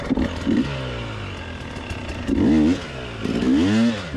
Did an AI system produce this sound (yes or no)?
no